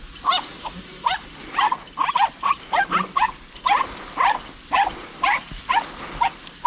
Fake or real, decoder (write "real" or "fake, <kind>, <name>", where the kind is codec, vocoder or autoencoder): real